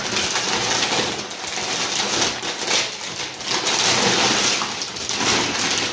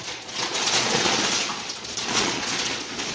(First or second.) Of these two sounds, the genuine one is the first